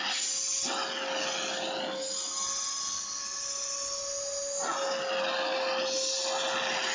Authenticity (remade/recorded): recorded